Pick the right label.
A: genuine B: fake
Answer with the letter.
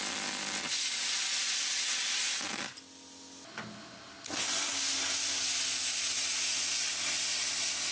A